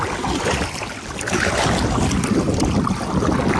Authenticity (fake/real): real